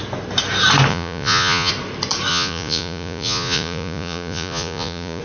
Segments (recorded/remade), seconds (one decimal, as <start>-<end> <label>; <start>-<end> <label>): 0.0-0.9 recorded; 0.9-1.7 remade; 1.7-2.3 recorded; 2.3-5.2 remade